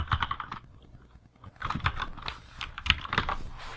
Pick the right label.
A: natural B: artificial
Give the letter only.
A